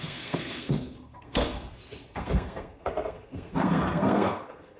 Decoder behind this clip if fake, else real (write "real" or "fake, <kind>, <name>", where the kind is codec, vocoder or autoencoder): fake, codec, SNAC